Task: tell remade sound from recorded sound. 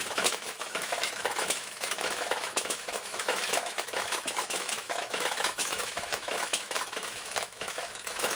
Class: remade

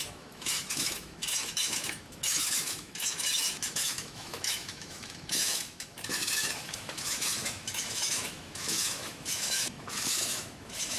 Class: remade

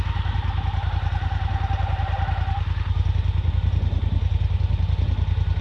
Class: recorded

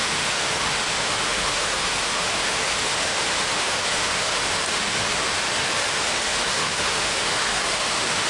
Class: remade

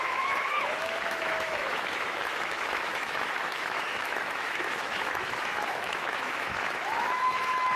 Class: remade